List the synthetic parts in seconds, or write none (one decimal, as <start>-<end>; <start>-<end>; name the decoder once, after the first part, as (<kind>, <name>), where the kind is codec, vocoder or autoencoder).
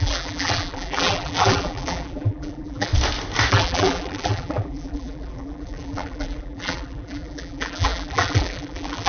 0.0-2.9 (vocoder, BigVGAN v2); 3.5-9.1